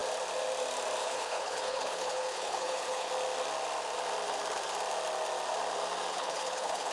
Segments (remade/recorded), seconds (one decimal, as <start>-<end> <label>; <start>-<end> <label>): 0.0-1.0 recorded; 1.0-3.1 remade; 3.1-6.1 recorded; 6.1-6.9 remade

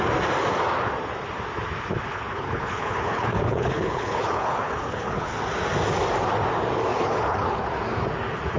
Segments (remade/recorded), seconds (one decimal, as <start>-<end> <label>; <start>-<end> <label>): 0.0-2.1 recorded; 2.1-5.4 remade; 5.4-6.9 recorded; 6.9-7.7 remade; 7.7-8.6 recorded

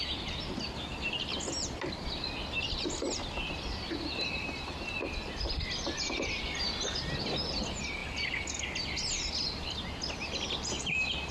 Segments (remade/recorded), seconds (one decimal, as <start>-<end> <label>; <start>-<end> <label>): 0.0-11.3 recorded

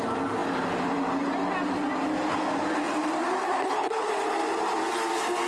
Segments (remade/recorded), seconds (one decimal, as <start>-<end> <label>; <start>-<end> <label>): 0.0-3.4 recorded; 3.4-4.1 remade; 4.1-5.5 recorded